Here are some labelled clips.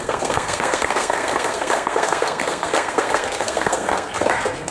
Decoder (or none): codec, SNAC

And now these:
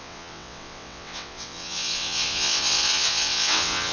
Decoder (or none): vocoder, WaveNeXt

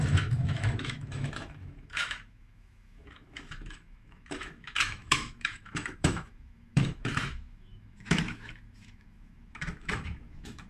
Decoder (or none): autoencoder, DAC-VAE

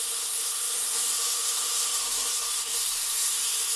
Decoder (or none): codec, SNAC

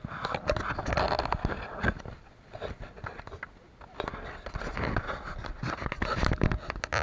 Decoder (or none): none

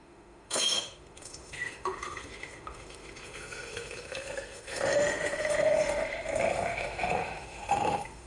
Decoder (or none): autoencoder, DAC-VAE